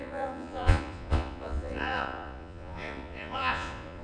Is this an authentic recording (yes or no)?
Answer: no